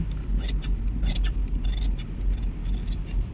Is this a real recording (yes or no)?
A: yes